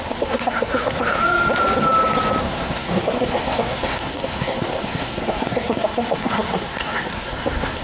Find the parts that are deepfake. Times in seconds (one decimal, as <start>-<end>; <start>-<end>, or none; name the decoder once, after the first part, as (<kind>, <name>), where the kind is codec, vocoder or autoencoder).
0.0-1.2 (codec, SNAC); 2.4-7.8